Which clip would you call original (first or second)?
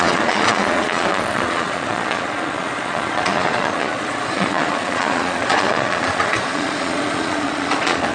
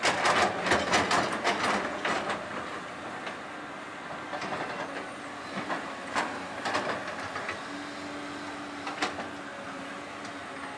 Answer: second